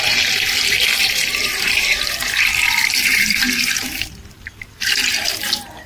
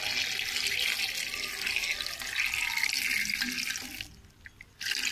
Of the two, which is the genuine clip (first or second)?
second